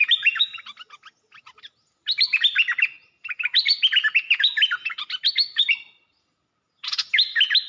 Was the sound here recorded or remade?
recorded